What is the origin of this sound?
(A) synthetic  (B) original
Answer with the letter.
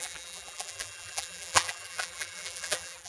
A